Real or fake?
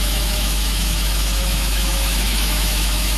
fake